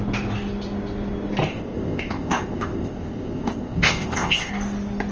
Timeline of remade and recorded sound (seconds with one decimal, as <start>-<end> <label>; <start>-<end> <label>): 0.0-1.5 recorded; 1.5-4.5 remade; 4.5-5.1 recorded